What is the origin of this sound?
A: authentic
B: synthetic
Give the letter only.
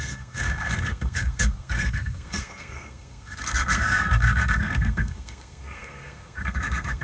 B